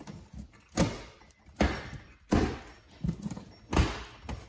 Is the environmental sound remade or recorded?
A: recorded